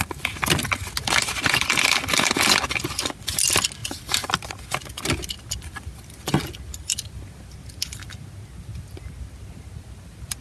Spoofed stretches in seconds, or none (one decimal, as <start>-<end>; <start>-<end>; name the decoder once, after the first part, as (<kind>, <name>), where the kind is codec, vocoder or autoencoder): none